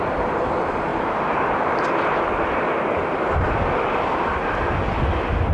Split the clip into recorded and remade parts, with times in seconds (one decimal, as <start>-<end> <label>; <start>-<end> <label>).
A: 0.0-5.5 recorded